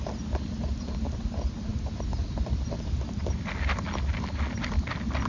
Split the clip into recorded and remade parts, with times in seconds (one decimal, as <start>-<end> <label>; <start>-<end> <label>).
0.0-5.3 recorded